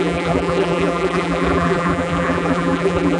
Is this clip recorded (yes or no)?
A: no